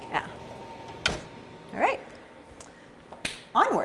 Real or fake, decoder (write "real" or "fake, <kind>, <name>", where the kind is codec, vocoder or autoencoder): real